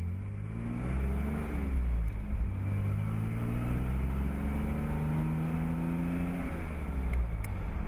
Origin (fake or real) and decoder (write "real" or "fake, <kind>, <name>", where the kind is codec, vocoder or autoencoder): real